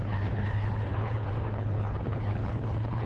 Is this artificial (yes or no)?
yes